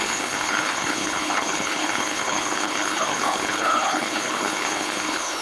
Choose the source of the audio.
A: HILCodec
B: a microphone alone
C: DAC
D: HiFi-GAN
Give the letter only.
A